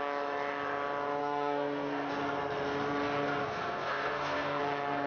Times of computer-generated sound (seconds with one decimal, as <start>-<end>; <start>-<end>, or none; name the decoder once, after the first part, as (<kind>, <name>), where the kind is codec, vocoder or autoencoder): 1.2-2.1 (codec, SNAC); 3.4-4.6